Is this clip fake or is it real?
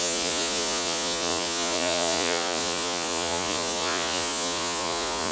fake